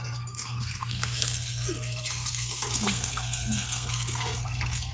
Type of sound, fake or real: fake